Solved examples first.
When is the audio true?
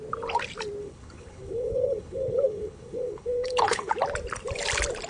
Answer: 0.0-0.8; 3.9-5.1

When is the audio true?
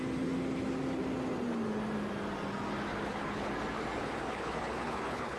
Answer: 0.0-2.9; 3.5-4.0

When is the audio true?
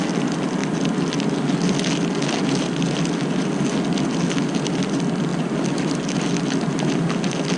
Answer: 0.0-7.6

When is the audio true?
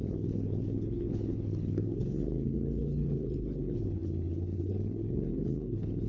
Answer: none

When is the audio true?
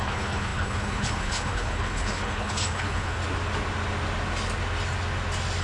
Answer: 3.2-5.6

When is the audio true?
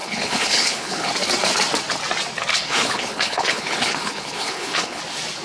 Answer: 1.1-2.5; 5.0-5.4